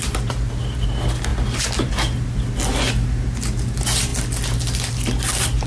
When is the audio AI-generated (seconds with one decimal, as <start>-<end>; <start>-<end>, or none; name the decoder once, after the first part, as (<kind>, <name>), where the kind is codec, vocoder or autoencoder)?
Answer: none